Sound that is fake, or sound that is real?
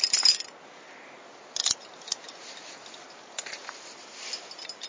real